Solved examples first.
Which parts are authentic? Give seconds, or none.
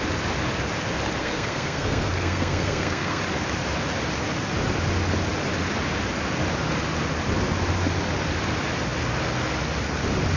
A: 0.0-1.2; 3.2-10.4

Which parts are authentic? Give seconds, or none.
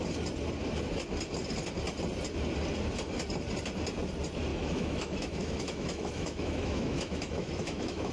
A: 0.0-4.5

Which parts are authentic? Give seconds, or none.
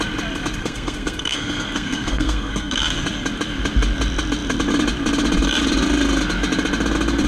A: 0.0-0.6; 2.8-7.3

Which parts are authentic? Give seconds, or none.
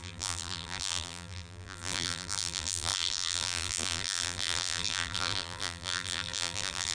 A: none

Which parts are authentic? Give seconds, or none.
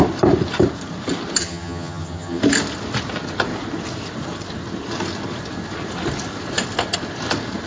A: 0.0-1.4; 2.4-7.7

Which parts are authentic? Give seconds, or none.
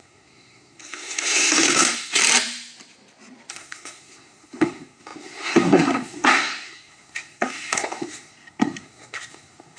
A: 2.2-3.5